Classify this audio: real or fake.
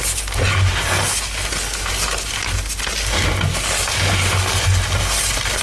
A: real